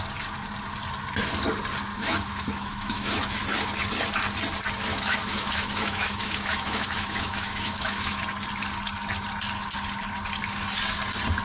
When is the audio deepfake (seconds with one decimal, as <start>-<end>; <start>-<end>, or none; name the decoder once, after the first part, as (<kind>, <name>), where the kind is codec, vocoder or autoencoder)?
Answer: 1.9-3.3 (autoencoder, DAC-VAE); 4.9-8.2